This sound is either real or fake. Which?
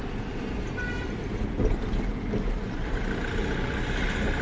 real